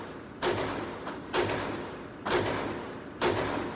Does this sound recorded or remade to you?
recorded